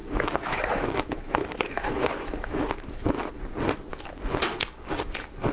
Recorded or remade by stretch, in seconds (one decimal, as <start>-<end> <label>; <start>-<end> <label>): 0.0-3.3 remade; 3.3-5.5 recorded